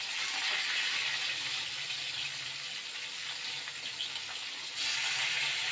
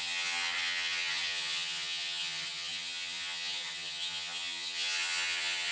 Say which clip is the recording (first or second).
first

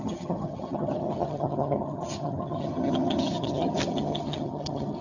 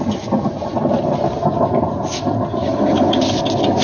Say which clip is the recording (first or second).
second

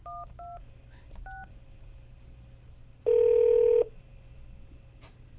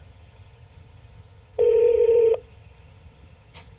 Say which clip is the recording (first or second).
first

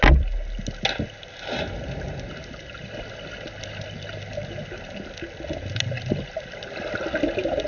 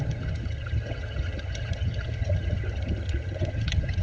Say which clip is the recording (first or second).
first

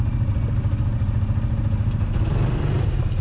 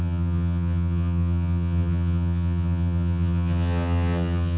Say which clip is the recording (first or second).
first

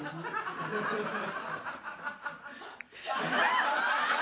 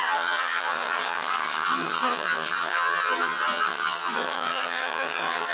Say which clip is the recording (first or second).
first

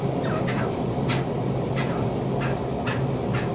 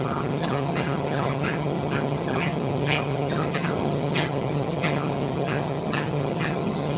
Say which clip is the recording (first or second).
first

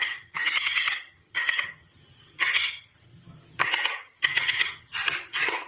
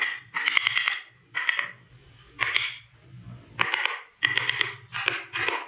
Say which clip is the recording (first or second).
second